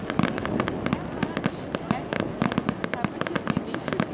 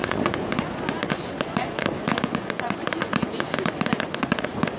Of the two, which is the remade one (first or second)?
second